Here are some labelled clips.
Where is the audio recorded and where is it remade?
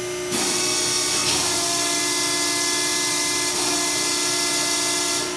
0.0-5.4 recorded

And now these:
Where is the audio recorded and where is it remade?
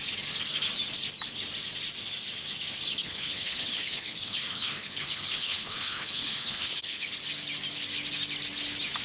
0.0-3.0 recorded; 3.0-7.1 remade; 7.1-9.0 recorded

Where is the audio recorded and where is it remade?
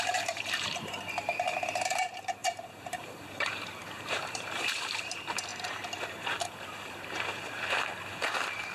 0.0-8.7 remade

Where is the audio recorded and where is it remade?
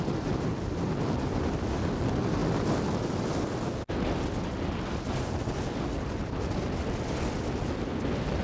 0.0-8.4 recorded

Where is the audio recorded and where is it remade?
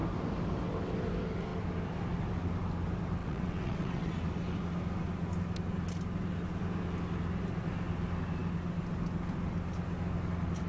0.0-3.2 recorded; 3.2-4.1 remade; 4.1-10.7 recorded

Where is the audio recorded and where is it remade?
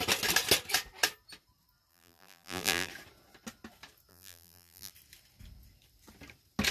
0.0-1.9 recorded; 1.9-2.9 remade; 2.9-4.1 recorded; 4.1-4.9 remade; 4.9-6.7 recorded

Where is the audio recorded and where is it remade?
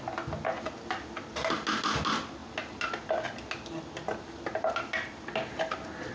0.0-6.1 recorded